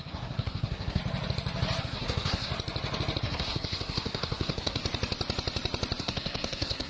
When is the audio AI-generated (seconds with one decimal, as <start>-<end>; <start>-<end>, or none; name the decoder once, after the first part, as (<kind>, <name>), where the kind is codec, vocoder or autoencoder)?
0.0-1.0 (codec, SNAC); 1.8-2.5; 3.2-4.8; 6.0-6.9

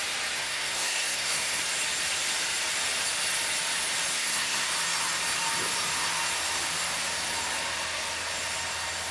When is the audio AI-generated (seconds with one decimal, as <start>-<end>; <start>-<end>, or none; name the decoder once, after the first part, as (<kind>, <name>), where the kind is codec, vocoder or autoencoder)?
0.4-1.6 (codec, SNAC); 4.1-4.7

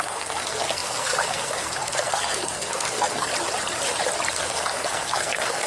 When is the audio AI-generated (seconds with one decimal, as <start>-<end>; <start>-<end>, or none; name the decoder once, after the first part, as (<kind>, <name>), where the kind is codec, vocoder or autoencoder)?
0.0-3.3 (codec, SNAC); 4.3-5.7

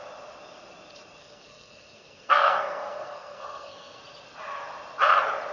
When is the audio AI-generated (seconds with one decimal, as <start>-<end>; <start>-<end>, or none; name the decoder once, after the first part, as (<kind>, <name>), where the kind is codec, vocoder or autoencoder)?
1.2-4.0 (codec, SNAC)

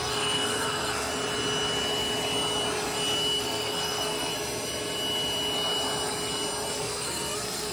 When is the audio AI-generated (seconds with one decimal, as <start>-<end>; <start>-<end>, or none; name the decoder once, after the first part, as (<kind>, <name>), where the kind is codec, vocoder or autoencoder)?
0.0-1.1 (codec, SNAC); 3.4-4.3; 6.7-7.7